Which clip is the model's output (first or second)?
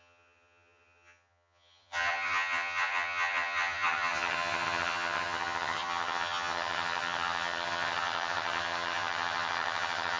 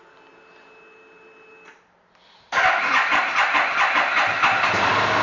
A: first